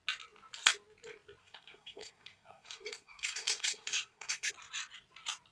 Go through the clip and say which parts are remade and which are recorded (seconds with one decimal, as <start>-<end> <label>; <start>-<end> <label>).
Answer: 0.0-1.4 recorded; 1.4-4.5 remade; 4.5-5.5 recorded

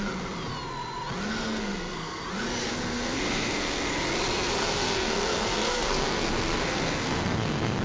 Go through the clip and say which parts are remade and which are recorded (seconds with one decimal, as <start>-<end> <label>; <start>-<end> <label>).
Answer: 0.0-1.3 recorded; 1.3-2.2 remade; 2.2-2.6 recorded; 2.6-3.9 remade; 3.9-4.6 recorded; 4.6-7.8 remade